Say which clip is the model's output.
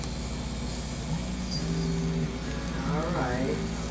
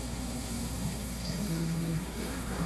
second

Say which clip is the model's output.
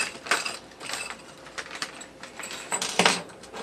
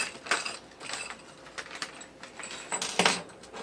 first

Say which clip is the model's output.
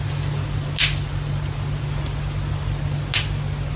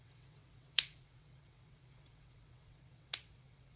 second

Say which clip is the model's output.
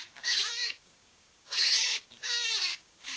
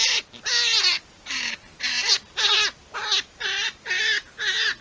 first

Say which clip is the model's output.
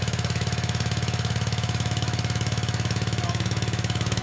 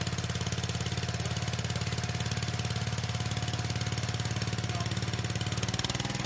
first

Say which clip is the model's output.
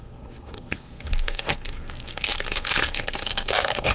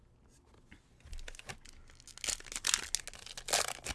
first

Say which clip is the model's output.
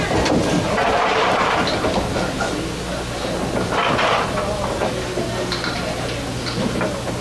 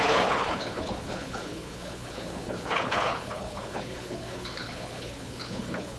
second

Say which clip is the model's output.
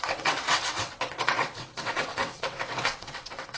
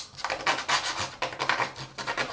first